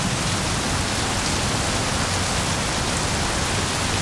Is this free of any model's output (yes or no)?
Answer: yes